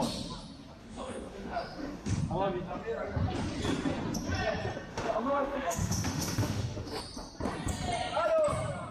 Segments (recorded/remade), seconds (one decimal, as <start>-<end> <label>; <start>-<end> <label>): 0.0-0.8 recorded; 0.8-2.2 remade; 2.2-4.9 recorded; 4.9-7.0 remade; 7.0-8.9 recorded